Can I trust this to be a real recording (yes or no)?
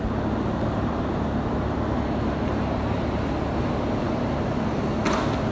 yes